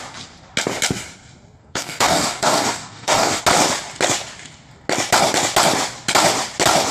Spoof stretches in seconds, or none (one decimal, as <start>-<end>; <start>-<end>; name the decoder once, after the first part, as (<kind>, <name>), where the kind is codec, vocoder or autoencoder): 1.6-3.4 (codec, DAC)